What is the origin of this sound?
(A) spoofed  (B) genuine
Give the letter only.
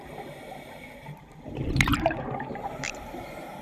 A